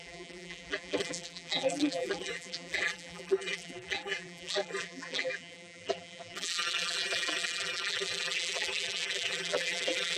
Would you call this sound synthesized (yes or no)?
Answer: yes